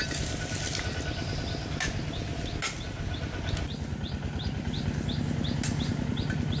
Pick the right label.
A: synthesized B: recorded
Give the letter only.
B